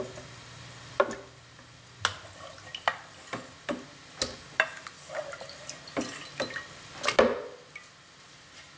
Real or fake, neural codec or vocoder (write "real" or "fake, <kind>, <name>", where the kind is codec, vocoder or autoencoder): real